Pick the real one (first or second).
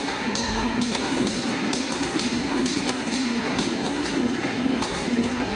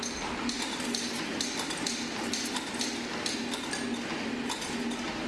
second